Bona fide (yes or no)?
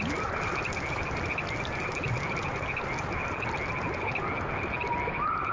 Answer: yes